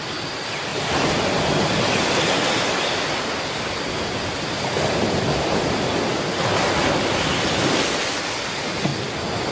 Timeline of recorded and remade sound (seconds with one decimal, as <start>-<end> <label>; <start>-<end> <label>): 0.0-9.5 recorded